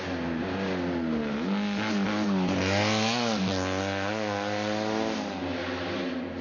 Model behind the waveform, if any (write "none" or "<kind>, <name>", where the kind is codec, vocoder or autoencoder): none